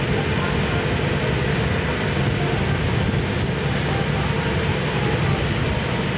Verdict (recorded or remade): recorded